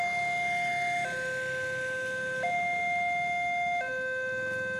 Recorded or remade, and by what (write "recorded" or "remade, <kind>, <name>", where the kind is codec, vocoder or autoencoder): recorded